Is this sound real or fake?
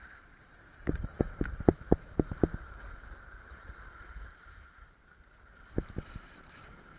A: fake